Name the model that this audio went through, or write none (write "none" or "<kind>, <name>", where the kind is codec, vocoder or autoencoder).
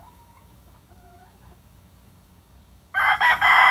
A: codec, DAC